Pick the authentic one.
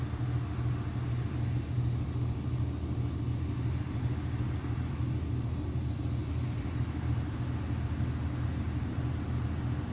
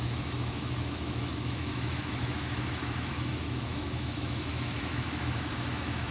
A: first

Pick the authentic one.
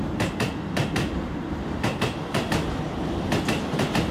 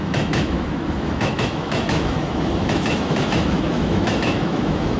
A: first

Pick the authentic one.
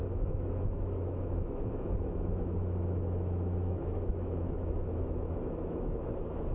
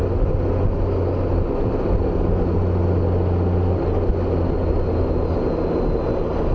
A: second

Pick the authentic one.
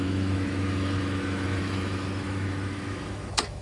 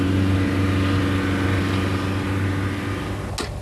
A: second